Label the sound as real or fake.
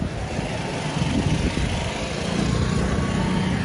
real